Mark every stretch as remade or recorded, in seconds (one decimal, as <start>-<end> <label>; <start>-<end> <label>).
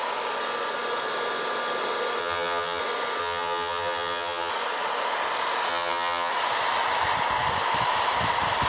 0.0-2.2 recorded; 2.2-2.8 remade; 2.8-3.2 recorded; 3.2-4.5 remade; 4.5-5.7 recorded; 5.7-6.3 remade; 6.3-8.7 recorded